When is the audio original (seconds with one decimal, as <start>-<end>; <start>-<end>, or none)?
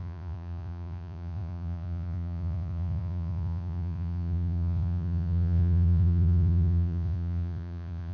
none